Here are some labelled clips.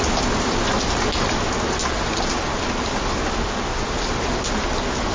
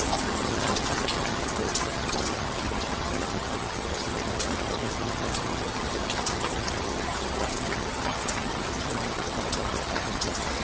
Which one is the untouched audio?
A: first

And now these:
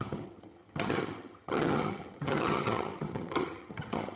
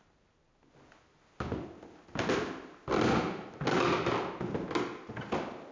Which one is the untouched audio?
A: second